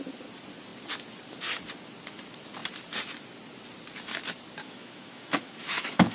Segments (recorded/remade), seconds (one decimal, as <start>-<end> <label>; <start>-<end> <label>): 0.0-4.6 recorded; 4.6-6.1 remade